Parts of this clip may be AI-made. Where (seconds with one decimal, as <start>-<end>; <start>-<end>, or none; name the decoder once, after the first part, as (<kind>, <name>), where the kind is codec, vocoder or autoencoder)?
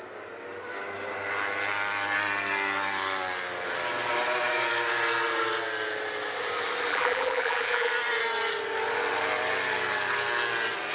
6.9-7.9 (vocoder, BigVGAN v2)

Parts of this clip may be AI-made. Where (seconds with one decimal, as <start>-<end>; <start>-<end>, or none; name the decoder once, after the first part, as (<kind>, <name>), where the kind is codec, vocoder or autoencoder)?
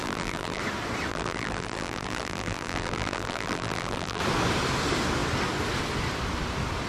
0.0-0.6 (vocoder, BigVGAN v2); 1.1-4.2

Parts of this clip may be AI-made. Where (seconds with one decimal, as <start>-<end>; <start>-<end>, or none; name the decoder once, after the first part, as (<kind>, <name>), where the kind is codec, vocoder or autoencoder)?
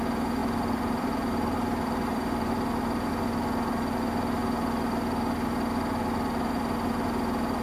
0.4-3.1 (vocoder, BigVGAN v2)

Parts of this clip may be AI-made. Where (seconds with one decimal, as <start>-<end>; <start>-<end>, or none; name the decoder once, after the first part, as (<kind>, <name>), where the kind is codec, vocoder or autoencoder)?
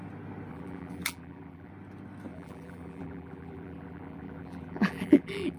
0.5-1.7 (vocoder, BigVGAN v2); 2.3-5.6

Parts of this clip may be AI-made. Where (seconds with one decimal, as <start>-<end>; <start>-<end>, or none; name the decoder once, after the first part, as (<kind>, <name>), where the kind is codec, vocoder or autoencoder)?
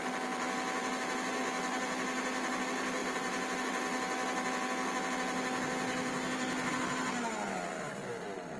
none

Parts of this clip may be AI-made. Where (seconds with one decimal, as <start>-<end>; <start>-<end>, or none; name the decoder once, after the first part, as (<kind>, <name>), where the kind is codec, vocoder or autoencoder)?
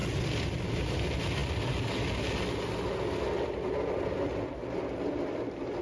none